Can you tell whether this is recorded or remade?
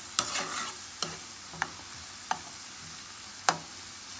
recorded